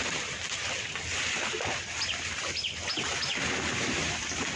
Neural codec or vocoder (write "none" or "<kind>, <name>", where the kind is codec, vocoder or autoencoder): vocoder, BigVGAN v2